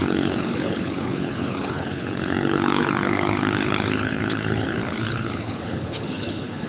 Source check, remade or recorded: remade